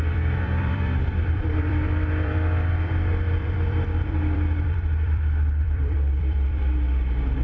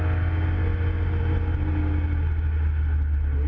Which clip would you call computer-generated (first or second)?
first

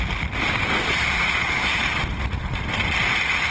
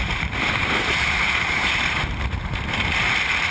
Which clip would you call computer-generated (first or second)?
second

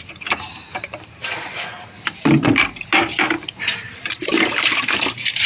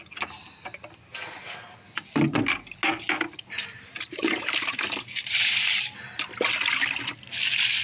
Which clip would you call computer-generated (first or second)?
first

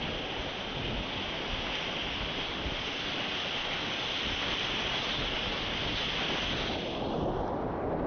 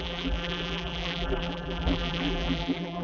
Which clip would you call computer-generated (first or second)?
second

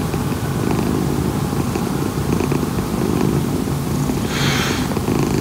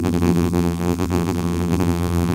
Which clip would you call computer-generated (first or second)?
second